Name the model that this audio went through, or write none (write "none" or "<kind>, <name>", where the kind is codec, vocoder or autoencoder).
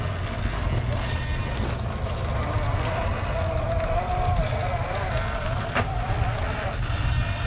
none